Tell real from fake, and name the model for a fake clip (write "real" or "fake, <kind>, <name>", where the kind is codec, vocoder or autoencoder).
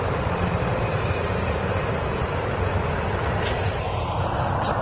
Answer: fake, vocoder, BigVGAN v2